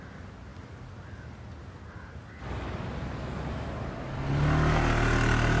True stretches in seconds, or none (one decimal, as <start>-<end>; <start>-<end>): 0.0-5.6